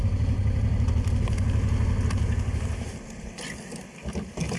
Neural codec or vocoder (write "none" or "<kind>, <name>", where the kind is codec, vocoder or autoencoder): none